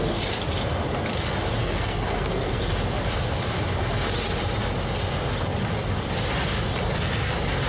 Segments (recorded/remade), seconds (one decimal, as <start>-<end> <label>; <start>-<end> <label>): 0.0-1.6 recorded; 1.6-2.6 remade; 2.6-7.7 recorded